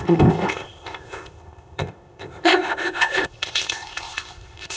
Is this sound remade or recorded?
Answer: remade